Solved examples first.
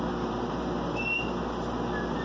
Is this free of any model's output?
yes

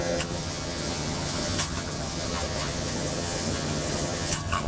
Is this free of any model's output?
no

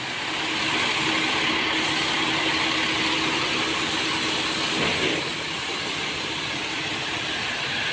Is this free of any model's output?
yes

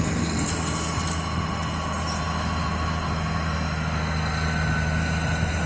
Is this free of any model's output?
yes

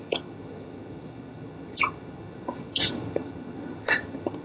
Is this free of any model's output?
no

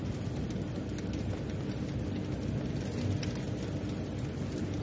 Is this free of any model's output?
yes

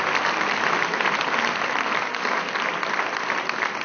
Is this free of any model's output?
yes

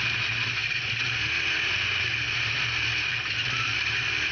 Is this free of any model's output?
yes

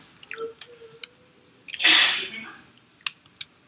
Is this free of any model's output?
yes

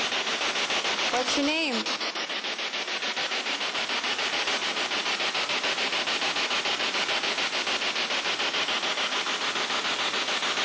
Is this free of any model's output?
yes